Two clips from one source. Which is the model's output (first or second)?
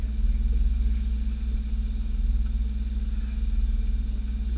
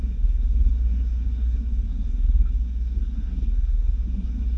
second